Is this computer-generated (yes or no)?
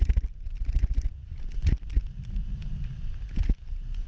no